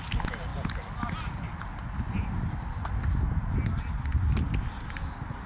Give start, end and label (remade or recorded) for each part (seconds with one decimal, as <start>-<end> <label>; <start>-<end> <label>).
0.0-5.5 recorded